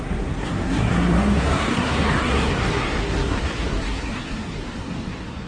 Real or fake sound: fake